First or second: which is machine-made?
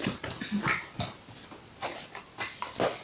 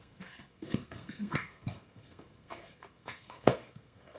second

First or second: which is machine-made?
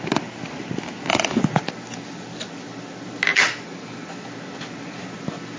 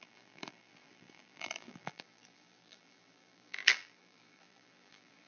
second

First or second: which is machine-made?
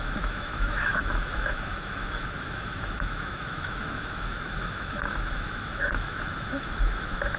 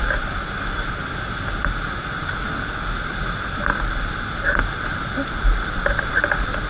first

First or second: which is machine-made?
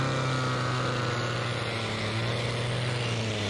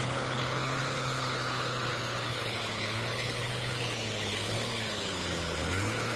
second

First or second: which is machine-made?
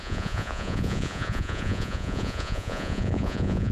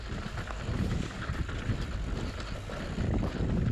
first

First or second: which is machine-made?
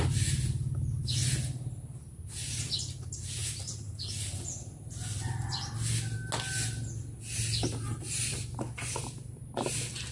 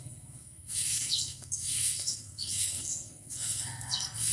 second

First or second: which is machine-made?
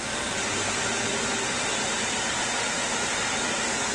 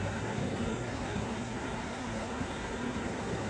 second